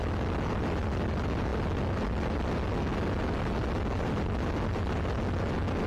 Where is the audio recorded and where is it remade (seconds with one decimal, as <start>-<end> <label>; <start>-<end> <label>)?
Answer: 0.0-5.9 recorded